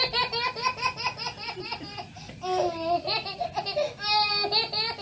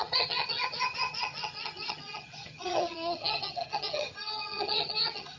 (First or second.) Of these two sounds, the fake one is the second